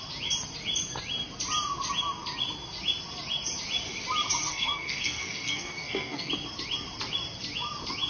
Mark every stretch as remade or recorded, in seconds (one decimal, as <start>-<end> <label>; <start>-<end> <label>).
0.0-4.5 recorded; 4.5-6.3 remade; 6.3-8.1 recorded